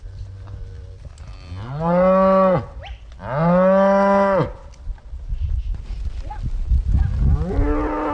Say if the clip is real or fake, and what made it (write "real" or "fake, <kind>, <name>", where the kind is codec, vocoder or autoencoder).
real